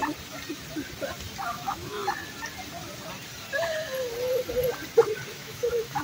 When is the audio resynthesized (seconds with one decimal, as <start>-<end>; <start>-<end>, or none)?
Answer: 1.5-2.0; 5.3-6.0